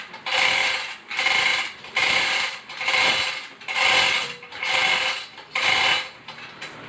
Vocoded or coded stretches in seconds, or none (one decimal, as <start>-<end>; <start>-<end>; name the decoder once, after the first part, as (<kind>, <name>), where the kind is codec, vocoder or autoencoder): 1.5-3.1 (vocoder, BigVGAN v2)